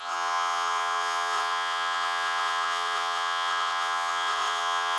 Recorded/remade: remade